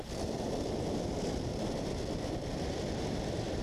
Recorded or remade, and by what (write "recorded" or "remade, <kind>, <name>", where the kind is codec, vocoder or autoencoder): recorded